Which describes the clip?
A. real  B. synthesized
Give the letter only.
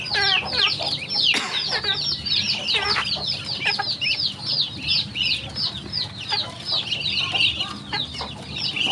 A